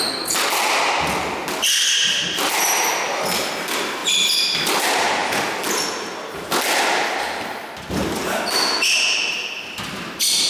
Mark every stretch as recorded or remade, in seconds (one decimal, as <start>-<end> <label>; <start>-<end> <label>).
0.0-10.5 recorded